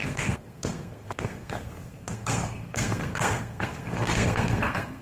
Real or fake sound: fake